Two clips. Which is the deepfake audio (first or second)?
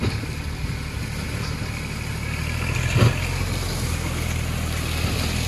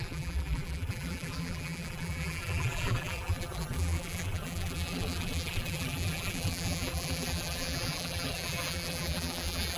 second